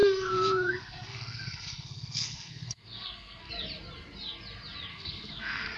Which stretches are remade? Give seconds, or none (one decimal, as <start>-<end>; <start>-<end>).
0.0-3.5; 4.9-5.8